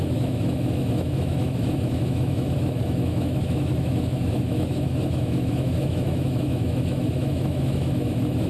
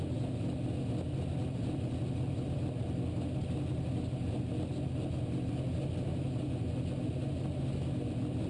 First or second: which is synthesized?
first